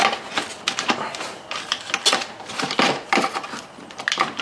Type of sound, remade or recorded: recorded